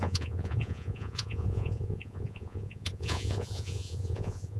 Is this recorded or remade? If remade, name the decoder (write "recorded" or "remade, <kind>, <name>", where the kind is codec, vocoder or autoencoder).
remade, vocoder, Vocos